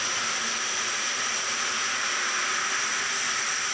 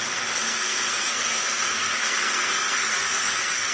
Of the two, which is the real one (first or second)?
first